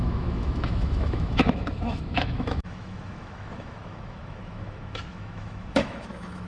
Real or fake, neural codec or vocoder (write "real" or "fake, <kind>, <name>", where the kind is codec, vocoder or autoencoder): fake, autoencoder, DAC-VAE